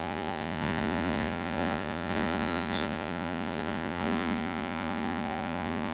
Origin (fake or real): fake